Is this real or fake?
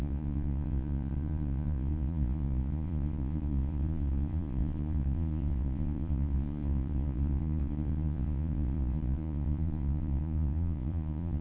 fake